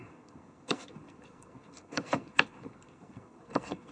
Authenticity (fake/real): fake